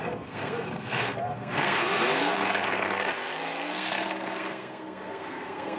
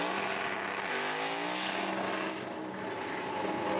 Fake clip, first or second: first